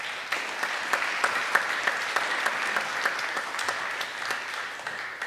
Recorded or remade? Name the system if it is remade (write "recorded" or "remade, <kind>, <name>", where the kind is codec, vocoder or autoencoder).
recorded